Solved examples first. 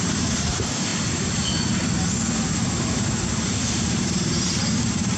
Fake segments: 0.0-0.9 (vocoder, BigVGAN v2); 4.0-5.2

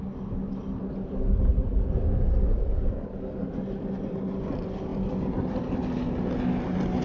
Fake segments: 1.5-2.9 (vocoder, BigVGAN v2)

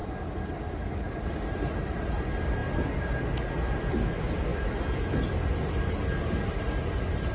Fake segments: 0.0-2.0 (vocoder, BigVGAN v2); 2.6-3.1; 4.5-5.6

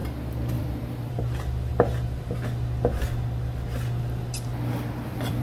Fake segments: 0.6-1.7 (vocoder, BigVGAN v2); 4.9-5.4

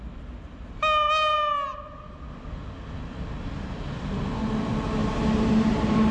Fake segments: 5.0-6.1 (vocoder, BigVGAN v2)

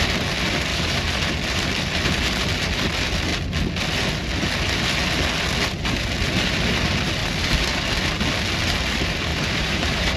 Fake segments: 0.7-1.3 (vocoder, BigVGAN v2); 9.3-10.2